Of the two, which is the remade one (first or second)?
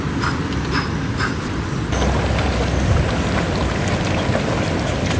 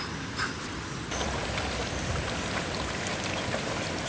second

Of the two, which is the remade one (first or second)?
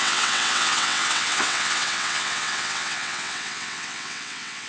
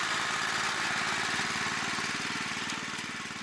first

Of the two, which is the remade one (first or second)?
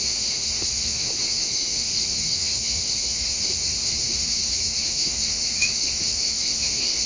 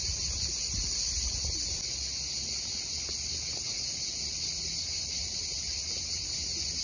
first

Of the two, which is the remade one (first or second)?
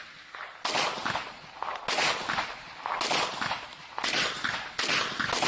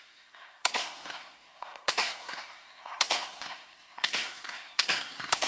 second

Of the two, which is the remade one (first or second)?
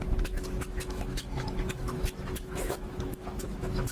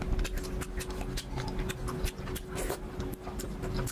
first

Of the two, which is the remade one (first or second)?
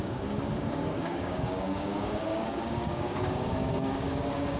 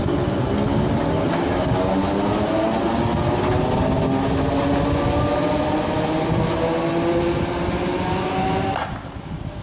first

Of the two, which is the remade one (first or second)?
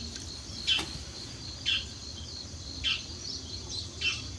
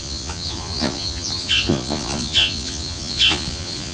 second